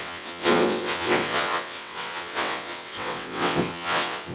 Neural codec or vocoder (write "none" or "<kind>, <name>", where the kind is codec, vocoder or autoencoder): vocoder, WaveNeXt